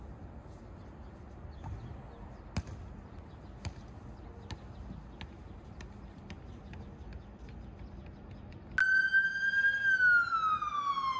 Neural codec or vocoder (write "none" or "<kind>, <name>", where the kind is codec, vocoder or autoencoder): none